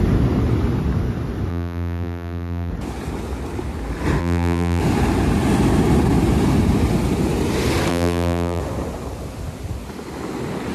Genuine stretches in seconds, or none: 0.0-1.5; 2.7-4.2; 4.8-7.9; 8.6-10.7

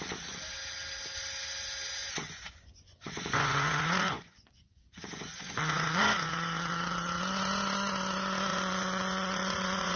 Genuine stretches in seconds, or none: 0.0-2.0; 6.3-8.5

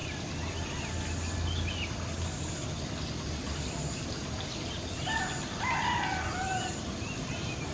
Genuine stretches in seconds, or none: 0.0-7.7

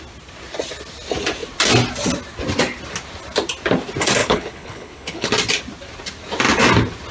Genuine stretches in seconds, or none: 0.0-4.2; 5.3-7.1

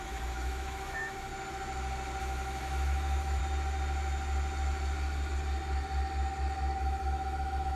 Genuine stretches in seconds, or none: 1.3-2.2; 3.4-6.8

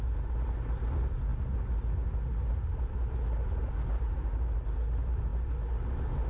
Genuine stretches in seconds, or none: 0.0-6.3